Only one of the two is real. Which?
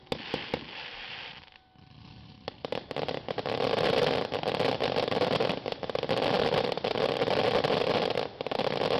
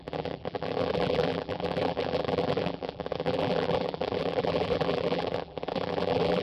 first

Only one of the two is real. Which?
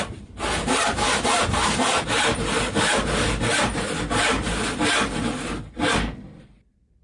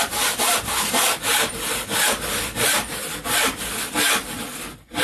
first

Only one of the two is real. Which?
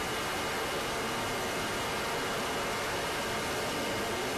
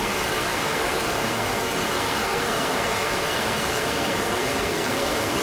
first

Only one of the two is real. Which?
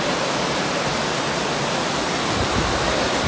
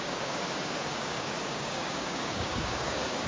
first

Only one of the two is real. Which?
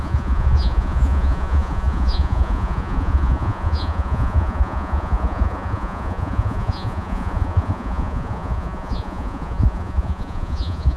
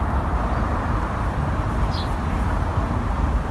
second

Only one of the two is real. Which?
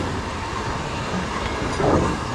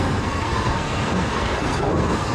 first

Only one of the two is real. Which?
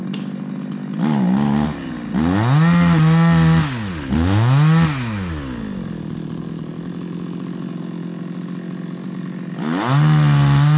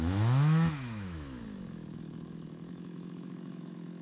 first